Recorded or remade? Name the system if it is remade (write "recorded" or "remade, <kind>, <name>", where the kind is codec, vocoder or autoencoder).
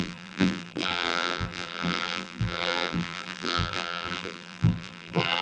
remade, vocoder, BigVGAN v2